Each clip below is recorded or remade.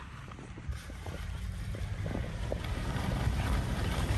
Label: remade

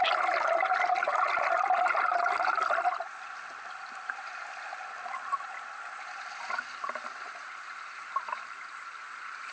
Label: recorded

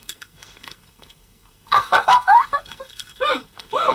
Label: remade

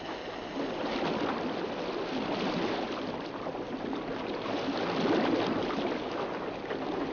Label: recorded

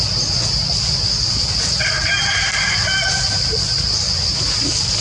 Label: recorded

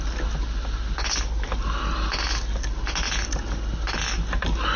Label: recorded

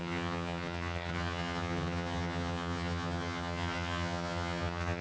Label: remade